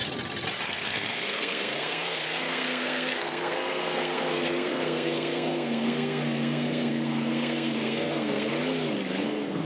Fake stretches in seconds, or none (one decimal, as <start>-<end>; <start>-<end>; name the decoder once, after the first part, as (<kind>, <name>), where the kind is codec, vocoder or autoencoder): 0.7-8.5 (codec, SNAC); 9.2-9.6